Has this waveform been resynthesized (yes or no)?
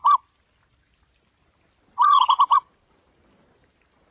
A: no